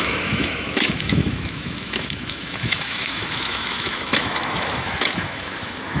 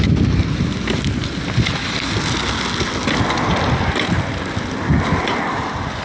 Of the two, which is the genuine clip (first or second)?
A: second